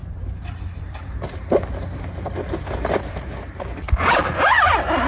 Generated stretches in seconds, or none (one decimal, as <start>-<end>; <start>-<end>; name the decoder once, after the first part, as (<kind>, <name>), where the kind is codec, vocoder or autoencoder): none